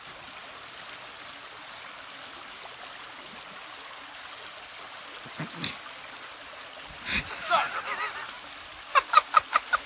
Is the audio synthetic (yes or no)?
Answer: no